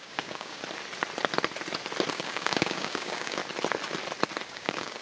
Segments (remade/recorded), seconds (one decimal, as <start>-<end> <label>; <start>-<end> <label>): 0.0-0.6 remade; 0.6-2.1 recorded; 2.1-3.4 remade; 3.4-4.5 recorded; 4.5-5.0 remade